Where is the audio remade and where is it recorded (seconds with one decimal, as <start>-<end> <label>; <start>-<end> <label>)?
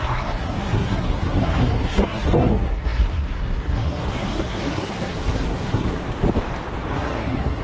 0.0-6.0 remade; 6.0-6.9 recorded; 6.9-7.6 remade